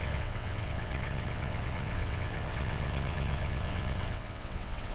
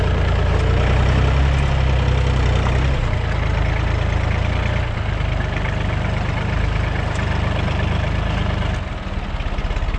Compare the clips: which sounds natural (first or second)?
second